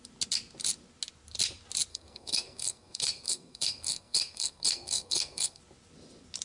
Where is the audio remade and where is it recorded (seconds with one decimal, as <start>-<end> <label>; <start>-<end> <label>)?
0.0-1.9 recorded; 1.9-5.6 remade; 5.6-6.4 recorded